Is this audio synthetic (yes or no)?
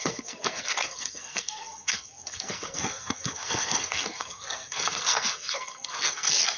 yes